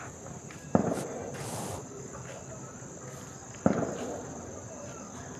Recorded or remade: recorded